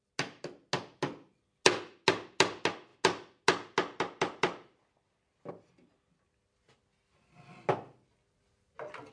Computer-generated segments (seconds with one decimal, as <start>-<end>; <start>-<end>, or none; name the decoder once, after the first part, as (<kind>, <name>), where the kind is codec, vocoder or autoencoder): none